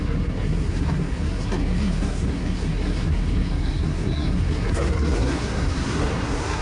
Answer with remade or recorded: remade